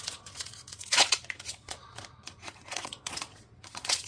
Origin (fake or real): fake